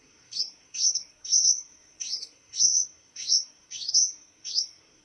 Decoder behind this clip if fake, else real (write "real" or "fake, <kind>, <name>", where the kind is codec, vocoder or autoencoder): fake, codec, SNAC